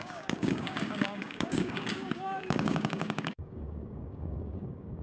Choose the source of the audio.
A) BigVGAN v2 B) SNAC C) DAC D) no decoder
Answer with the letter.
C